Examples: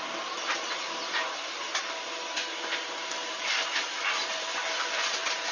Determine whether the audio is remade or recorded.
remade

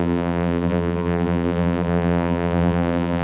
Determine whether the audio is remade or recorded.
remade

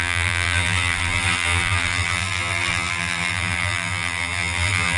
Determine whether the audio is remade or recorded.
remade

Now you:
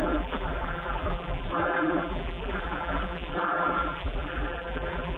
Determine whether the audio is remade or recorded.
remade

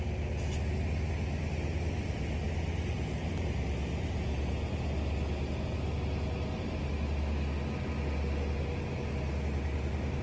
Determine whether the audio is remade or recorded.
recorded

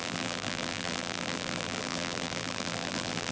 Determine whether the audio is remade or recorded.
remade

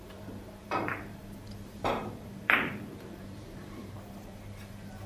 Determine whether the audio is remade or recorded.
remade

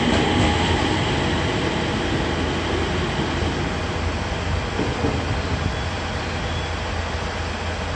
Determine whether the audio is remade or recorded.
recorded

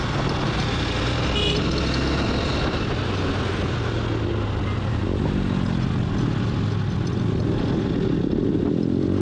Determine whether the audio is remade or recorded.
recorded